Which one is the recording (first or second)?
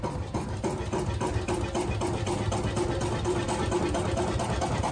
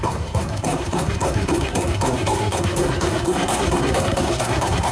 first